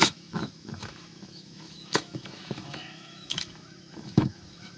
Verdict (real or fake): fake